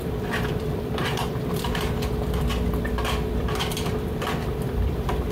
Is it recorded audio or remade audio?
remade